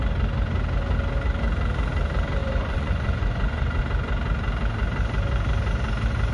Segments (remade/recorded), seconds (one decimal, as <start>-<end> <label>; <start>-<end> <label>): 0.0-2.4 recorded; 2.4-3.8 remade; 3.8-6.3 recorded